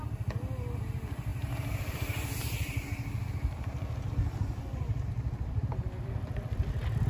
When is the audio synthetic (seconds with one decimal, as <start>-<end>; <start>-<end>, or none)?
none